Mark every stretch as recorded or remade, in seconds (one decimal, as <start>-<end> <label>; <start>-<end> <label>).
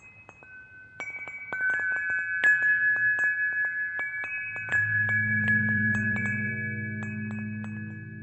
0.0-4.7 recorded; 4.7-6.5 remade; 6.5-8.2 recorded